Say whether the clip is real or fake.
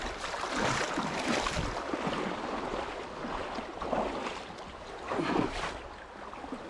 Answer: real